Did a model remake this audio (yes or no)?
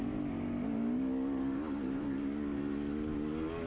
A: no